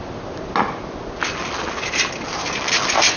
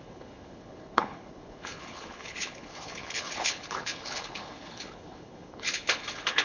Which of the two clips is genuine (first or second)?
first